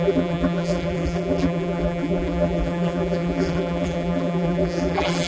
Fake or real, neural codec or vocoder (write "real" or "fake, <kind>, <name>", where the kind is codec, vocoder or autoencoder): fake, vocoder, BigVGAN v2